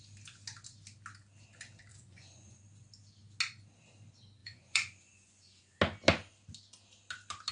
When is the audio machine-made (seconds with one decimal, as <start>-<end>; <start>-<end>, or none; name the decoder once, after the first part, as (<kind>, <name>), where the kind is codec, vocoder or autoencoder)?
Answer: 1.9-2.6 (vocoder, Vocos); 4.4-5.8